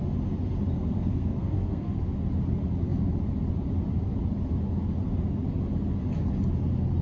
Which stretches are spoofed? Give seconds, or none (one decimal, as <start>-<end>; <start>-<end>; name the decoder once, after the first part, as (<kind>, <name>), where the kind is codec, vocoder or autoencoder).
0.8-2.0 (codec, SNAC)